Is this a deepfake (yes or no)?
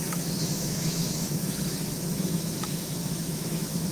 yes